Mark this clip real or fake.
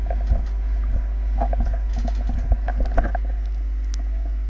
real